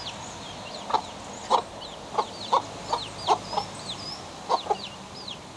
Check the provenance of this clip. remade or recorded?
recorded